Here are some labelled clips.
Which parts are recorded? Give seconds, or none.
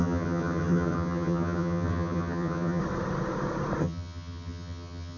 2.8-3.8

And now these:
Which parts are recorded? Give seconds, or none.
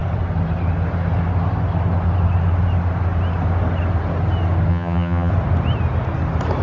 0.0-4.7; 5.3-6.6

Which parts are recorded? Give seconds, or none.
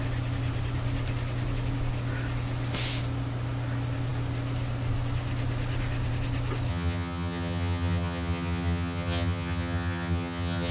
0.0-6.7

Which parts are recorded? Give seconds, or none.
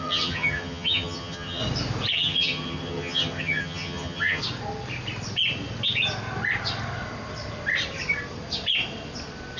1.6-2.1; 4.4-9.6